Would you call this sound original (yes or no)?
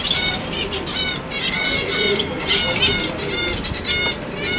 yes